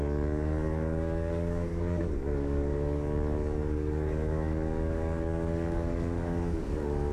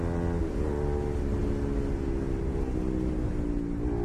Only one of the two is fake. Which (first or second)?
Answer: first